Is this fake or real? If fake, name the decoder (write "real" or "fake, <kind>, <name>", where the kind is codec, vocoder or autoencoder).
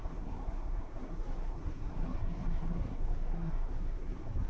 fake, codec, SNAC